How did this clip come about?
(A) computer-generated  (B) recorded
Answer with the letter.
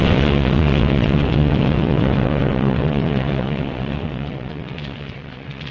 A